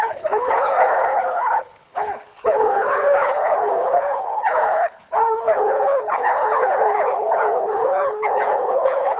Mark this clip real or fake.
fake